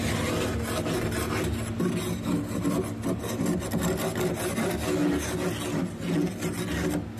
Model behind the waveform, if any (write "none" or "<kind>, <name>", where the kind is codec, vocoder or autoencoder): none